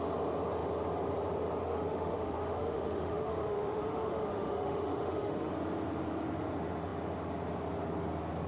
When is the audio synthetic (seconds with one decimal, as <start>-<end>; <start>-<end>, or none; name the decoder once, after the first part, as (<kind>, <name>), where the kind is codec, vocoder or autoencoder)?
1.6-5.5 (autoencoder, DAC-VAE)